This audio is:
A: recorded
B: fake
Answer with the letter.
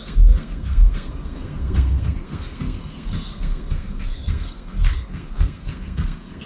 B